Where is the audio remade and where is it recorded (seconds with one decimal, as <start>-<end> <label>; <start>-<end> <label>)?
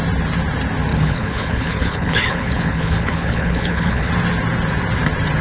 0.0-0.9 recorded; 0.9-4.1 remade; 4.1-5.4 recorded